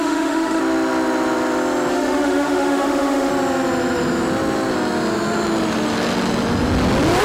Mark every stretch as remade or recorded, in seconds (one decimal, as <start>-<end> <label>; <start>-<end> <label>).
0.0-0.6 remade; 0.6-1.9 recorded; 1.9-3.3 remade; 3.3-7.2 recorded